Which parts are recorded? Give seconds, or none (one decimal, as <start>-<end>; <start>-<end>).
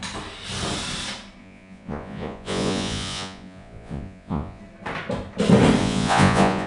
0.0-1.4; 4.6-5.8